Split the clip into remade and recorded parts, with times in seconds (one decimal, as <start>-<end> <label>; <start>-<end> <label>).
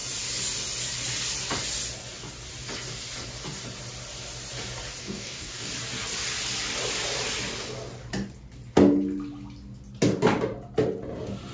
0.0-5.0 recorded; 5.0-5.7 remade; 5.7-11.5 recorded